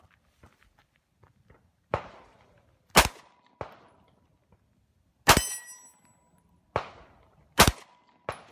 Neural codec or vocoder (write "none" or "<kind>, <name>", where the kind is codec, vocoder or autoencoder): none